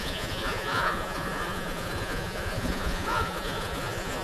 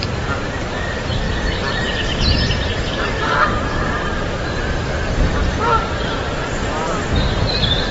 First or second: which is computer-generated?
first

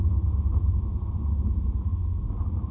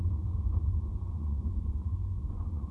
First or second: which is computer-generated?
second